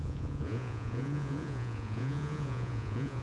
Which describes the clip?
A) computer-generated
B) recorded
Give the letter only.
A